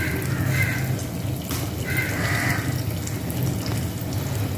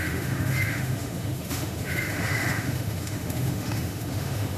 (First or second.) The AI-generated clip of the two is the second